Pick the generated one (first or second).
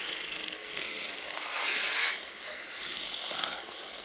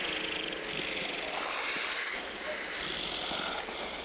first